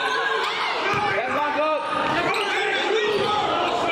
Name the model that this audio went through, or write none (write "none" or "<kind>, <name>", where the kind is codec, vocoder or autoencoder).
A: vocoder, BigVGAN v2